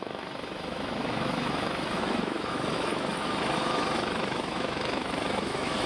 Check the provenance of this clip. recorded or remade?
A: remade